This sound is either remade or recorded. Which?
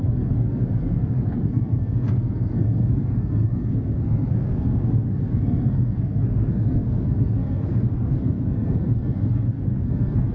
remade